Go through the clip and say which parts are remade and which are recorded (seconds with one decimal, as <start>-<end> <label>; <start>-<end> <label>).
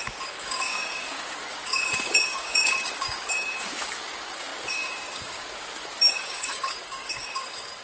0.0-7.8 remade